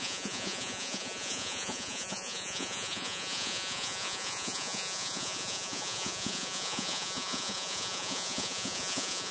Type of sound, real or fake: fake